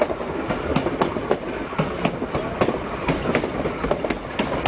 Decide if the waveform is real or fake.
real